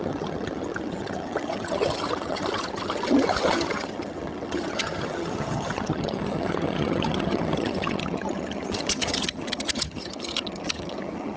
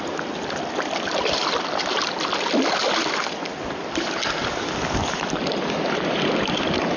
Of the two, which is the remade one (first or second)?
first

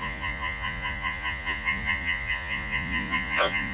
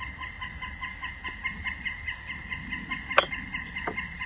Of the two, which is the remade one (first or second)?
first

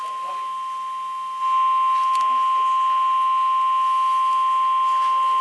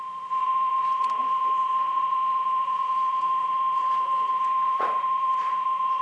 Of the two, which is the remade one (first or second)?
second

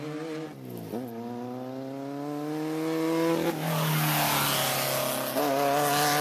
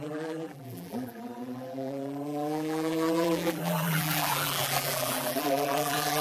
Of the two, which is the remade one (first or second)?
second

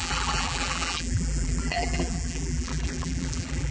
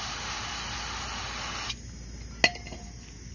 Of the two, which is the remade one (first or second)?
first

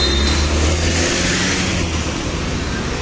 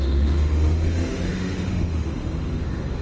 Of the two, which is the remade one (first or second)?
second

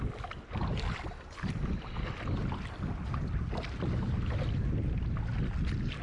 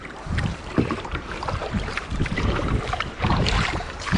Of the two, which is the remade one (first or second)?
second